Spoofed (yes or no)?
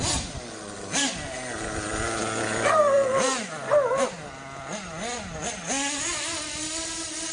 no